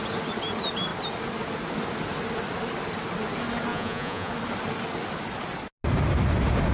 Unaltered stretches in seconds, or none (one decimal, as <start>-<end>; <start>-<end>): 0.0-3.7; 4.3-6.7

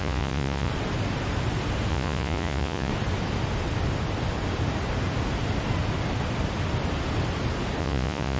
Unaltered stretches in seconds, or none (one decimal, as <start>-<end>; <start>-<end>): 0.7-1.9; 2.9-7.8

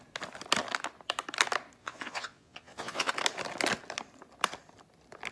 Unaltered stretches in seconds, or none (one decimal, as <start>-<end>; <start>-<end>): 0.0-1.8; 3.1-5.3